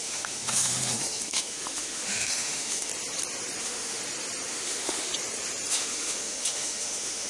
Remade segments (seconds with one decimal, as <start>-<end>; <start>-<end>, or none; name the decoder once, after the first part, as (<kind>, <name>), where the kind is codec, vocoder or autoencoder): 0.0-2.9 (autoencoder, DAC-VAE); 3.6-4.0; 4.5-5.1; 5.7-7.3